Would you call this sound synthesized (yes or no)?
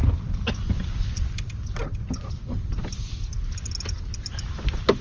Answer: no